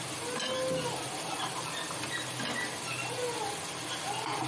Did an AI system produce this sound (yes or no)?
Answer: no